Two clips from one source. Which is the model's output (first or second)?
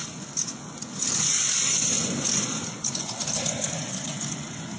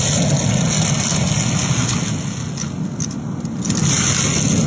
first